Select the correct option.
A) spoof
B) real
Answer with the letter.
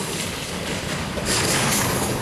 A